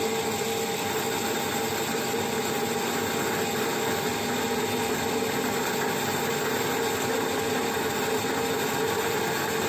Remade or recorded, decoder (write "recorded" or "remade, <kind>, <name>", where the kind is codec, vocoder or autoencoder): recorded